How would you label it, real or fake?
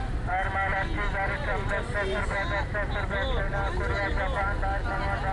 real